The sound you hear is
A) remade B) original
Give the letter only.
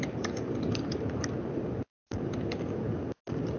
B